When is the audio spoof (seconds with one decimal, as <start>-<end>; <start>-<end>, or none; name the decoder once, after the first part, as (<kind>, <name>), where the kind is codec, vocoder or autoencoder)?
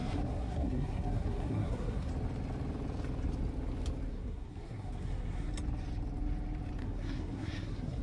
0.0-2.1 (codec, SNAC); 4.1-5.5; 6.8-8.0